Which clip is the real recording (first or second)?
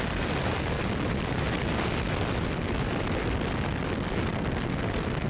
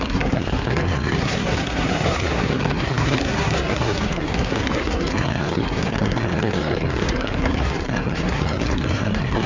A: first